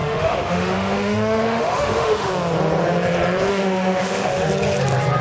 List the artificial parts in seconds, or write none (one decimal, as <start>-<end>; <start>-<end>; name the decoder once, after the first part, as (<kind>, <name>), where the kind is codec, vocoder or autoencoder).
0.0-2.3 (autoencoder, DAC-VAE); 3.5-4.5